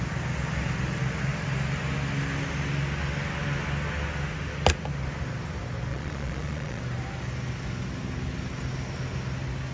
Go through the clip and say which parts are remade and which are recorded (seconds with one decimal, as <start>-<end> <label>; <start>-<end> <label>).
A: 0.0-5.9 recorded; 5.9-6.8 remade; 6.8-9.7 recorded